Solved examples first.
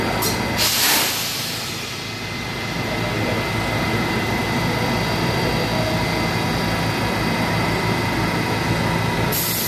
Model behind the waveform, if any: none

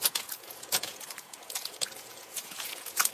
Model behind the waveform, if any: vocoder, Vocos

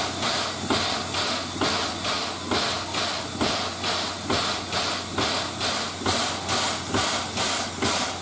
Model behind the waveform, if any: none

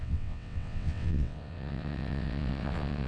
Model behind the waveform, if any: vocoder, WaveNeXt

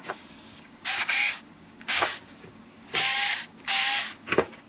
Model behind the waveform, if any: codec, DAC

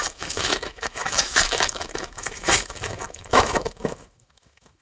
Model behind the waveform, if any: autoencoder, DAC-VAE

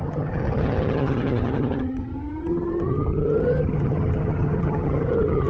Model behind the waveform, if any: vocoder, HiFi-GAN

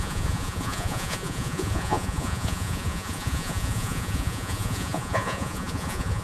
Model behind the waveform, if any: vocoder, Vocos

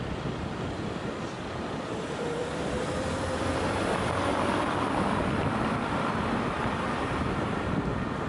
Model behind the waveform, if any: vocoder, BigVGAN v2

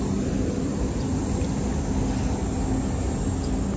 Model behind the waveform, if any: none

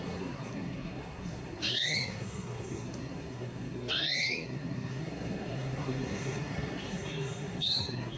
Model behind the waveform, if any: codec, SNAC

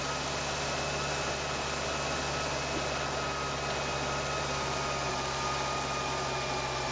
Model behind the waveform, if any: none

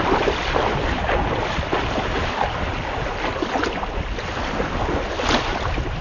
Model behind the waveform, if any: none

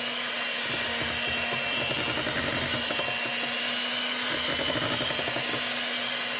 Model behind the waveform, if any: none